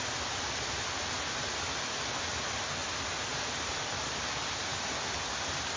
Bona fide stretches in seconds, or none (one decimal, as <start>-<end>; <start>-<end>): 0.0-5.8

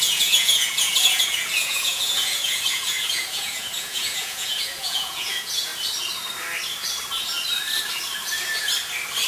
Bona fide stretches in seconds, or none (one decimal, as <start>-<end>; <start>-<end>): 5.7-9.3

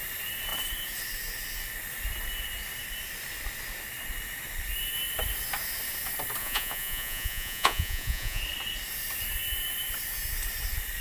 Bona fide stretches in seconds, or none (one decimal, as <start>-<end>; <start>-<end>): 0.0-6.4; 8.4-11.0

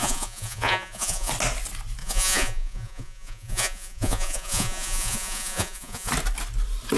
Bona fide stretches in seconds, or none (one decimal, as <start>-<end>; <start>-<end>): 1.3-2.0; 6.1-7.0

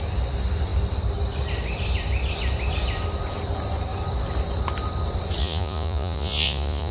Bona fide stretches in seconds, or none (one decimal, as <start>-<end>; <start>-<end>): 0.0-5.4